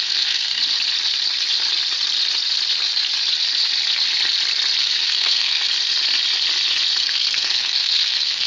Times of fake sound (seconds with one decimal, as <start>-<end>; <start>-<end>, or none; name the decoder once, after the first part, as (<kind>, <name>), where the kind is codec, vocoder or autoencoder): 0.0-0.6 (codec, SNAC); 4.8-5.7; 7.0-8.5